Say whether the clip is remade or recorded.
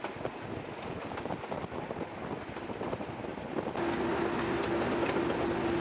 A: recorded